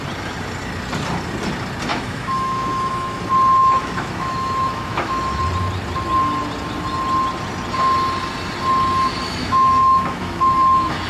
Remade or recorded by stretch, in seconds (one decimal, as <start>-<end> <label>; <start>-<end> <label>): 0.0-1.9 recorded; 1.9-3.2 remade; 3.2-3.6 recorded; 3.6-5.4 remade; 5.4-9.4 recorded; 9.4-11.1 remade